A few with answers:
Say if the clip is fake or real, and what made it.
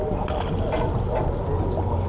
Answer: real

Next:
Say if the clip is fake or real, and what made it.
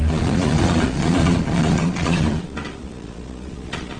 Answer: fake, vocoder, Vocos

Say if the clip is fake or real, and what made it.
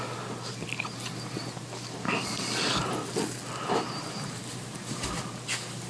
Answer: real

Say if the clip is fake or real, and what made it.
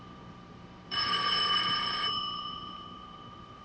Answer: fake, vocoder, BigVGAN v2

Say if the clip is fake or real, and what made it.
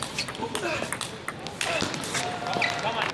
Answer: real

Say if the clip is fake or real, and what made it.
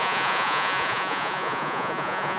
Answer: fake, vocoder, Vocos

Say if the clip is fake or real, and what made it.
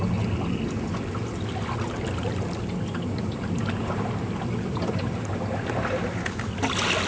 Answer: real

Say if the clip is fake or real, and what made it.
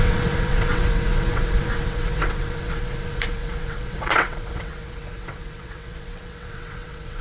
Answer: fake, vocoder, WaveNeXt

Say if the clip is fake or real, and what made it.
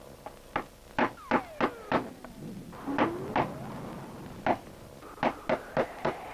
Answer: real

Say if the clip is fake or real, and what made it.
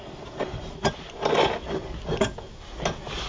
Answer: real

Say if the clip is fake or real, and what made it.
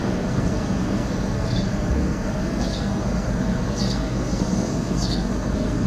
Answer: fake, codec, SNAC